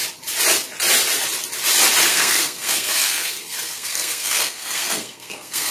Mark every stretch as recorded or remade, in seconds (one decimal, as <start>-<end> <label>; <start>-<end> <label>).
0.0-2.1 recorded; 2.1-5.7 remade